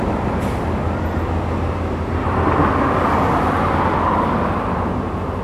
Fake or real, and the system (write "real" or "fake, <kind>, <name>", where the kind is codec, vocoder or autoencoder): real